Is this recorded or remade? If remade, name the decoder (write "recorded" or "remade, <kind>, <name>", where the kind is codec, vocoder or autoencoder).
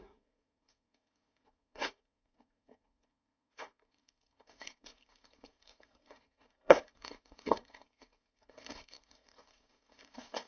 remade, codec, SNAC